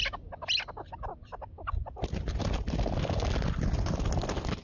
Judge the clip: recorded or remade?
recorded